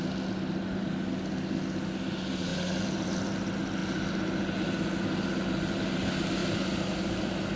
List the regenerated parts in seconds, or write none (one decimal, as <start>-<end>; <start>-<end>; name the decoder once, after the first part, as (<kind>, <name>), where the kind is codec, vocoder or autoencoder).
2.5-3.3 (vocoder, BigVGAN v2); 6.4-7.6